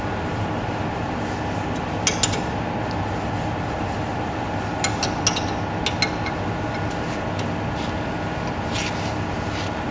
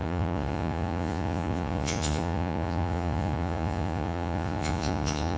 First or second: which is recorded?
first